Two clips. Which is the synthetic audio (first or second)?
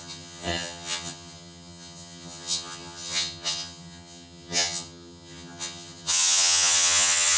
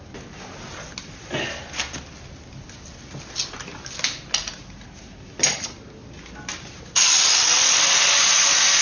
first